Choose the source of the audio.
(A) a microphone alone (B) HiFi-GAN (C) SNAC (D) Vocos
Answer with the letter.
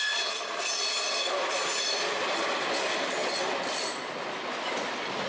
A